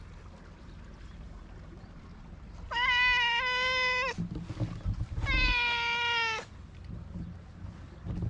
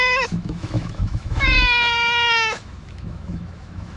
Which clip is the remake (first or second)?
second